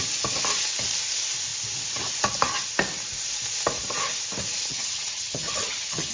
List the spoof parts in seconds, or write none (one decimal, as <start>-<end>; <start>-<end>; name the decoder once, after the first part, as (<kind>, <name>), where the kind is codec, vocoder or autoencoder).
4.7-6.1 (vocoder, HiFi-GAN)